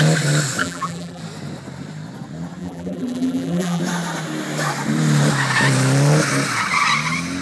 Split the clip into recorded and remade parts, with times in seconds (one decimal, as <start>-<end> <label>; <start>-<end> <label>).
0.0-0.6 recorded; 0.6-1.2 remade; 1.2-2.6 recorded; 2.6-3.8 remade; 3.8-7.4 recorded